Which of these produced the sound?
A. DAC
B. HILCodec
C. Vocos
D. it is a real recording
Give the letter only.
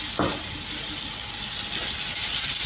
D